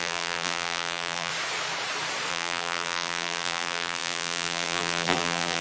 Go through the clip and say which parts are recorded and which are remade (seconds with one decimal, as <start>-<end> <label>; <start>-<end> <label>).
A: 0.0-1.3 remade; 1.3-2.3 recorded; 2.3-5.6 remade